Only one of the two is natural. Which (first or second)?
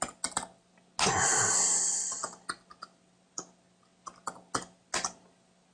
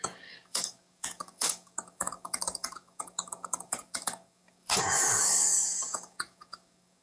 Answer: first